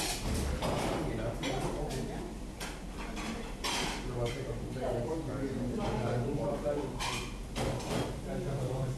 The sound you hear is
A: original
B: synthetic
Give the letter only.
B